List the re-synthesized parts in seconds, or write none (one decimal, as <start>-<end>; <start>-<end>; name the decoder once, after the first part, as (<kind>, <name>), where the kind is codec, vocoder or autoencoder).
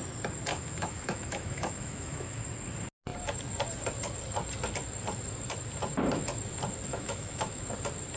0.5-2.4 (autoencoder, DAC-VAE); 6.9-7.6